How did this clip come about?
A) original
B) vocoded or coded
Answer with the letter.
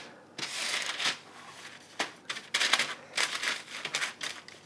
A